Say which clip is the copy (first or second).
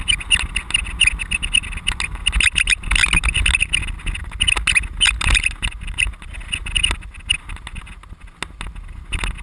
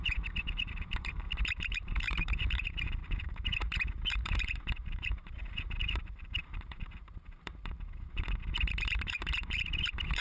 second